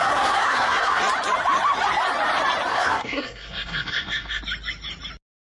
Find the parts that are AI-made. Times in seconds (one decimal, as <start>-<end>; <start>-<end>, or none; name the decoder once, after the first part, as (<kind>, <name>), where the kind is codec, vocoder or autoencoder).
0.0-1.0 (codec, SNAC); 2.7-4.4